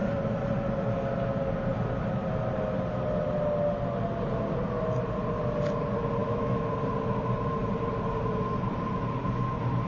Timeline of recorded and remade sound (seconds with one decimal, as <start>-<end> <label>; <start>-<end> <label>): 0.0-6.2 recorded; 6.2-6.7 remade; 6.7-9.9 recorded